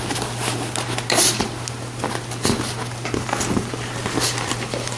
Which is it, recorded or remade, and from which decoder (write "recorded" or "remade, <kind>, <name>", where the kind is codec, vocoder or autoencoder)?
recorded